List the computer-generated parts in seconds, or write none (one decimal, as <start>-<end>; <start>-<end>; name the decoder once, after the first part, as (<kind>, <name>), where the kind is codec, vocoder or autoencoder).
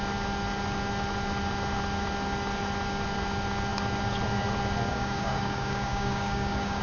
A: 4.9-6.8 (codec, DAC)